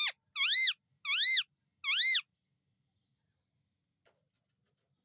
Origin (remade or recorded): recorded